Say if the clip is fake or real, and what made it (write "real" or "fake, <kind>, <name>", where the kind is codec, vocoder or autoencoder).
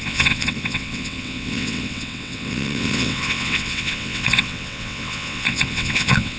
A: fake, vocoder, WaveNeXt